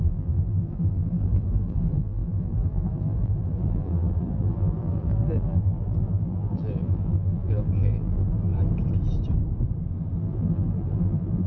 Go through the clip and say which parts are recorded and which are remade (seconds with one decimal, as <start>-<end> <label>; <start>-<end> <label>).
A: 0.0-8.5 remade; 8.5-10.2 recorded; 10.2-11.5 remade